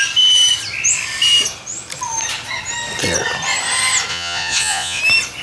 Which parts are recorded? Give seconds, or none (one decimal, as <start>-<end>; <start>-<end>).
0.0-4.1; 5.0-5.4